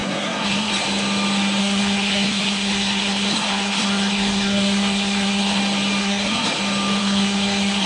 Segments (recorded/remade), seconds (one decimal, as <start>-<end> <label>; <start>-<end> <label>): 0.0-0.7 remade; 0.7-1.6 recorded; 1.6-5.6 remade; 5.6-6.0 recorded; 6.0-6.6 remade; 6.6-7.0 recorded; 7.0-7.9 remade